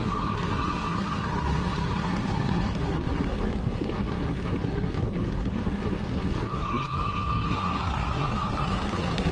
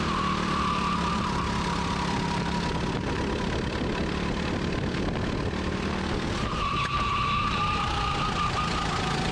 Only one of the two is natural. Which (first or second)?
second